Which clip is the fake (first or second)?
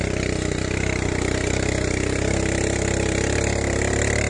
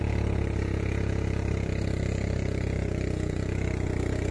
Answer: second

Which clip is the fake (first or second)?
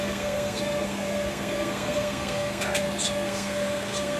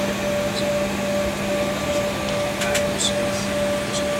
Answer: first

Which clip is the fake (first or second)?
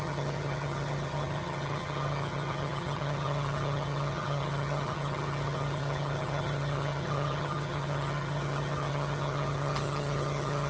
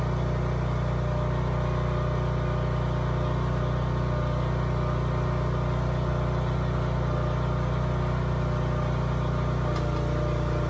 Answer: first